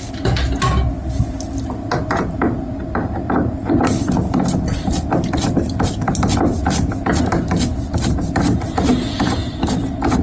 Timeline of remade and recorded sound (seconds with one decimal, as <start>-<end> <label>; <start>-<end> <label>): 0.0-8.9 recorded; 8.9-9.5 remade; 9.5-10.2 recorded